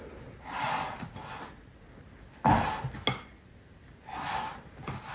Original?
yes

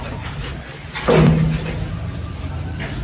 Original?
yes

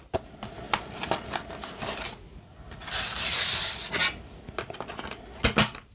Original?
yes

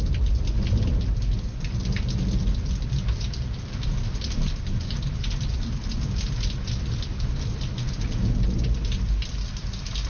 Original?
yes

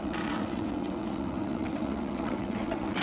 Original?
no